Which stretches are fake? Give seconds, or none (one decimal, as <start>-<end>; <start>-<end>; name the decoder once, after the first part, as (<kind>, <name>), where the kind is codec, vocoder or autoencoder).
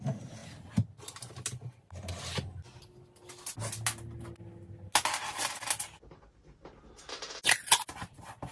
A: none